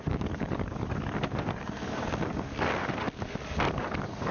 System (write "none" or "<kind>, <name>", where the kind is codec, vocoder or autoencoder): codec, DAC